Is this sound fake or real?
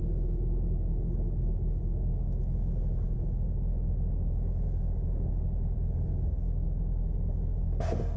real